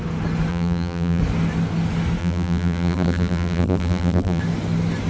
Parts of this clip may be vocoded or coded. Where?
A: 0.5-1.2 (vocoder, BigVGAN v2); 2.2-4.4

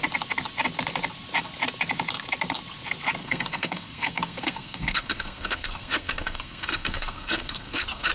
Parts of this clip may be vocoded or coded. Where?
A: 3.2-8.1 (codec, SNAC)

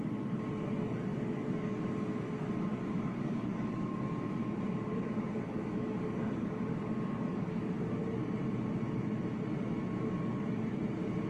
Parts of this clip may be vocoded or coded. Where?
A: 1.1-1.9 (codec, DAC); 2.7-7.7

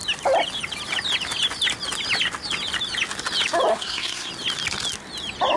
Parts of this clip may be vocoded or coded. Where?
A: 3.7-4.3 (codec, SNAC)

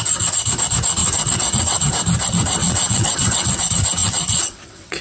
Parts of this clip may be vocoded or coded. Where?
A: 1.0-1.9 (vocoder, WaveNeXt); 2.6-3.6; 4.0-5.0

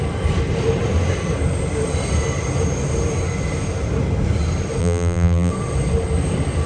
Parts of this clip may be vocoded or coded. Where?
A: 4.8-5.5 (vocoder, BigVGAN v2)

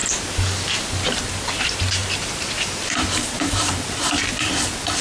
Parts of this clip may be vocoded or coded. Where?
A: 2.0-4.2 (vocoder, BigVGAN v2)